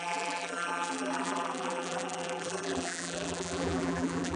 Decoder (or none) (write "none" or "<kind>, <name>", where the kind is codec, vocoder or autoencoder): vocoder, BigVGAN v2